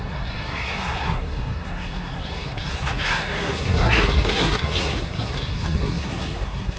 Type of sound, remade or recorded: remade